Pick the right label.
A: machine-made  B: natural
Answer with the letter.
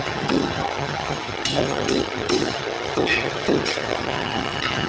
A